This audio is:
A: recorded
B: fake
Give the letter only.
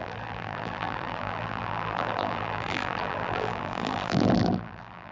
B